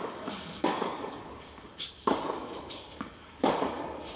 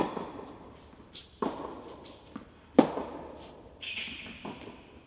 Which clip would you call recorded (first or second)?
second